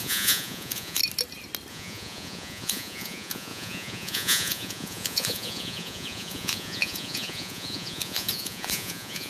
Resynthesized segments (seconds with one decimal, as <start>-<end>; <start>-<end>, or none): 0.0-1.0; 1.7-9.3